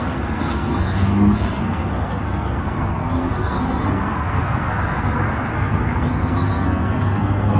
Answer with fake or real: fake